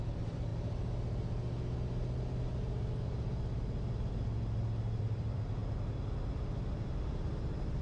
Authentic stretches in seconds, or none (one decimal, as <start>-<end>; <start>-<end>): 0.5-5.0; 5.6-6.9